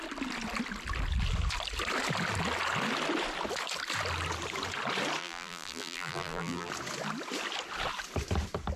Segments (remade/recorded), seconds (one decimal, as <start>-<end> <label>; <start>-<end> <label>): 0.0-5.2 recorded; 5.2-6.7 remade; 6.7-8.8 recorded